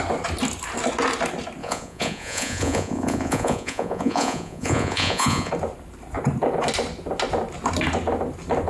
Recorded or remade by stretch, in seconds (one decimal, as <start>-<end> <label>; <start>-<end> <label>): 0.0-1.6 recorded; 1.6-5.5 remade; 5.5-8.7 recorded